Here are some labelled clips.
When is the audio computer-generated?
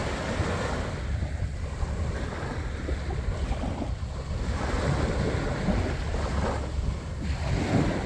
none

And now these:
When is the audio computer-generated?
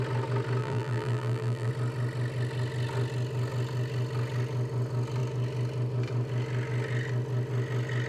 0.6-1.7